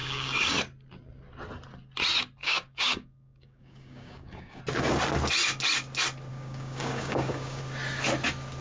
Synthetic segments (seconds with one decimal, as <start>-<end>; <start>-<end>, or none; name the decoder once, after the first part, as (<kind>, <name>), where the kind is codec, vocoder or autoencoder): 0.0-0.5 (codec, DAC); 2.4-4.6; 6.3-7.6